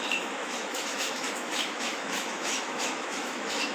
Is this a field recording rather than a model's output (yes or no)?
no